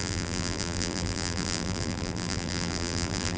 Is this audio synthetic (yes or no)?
yes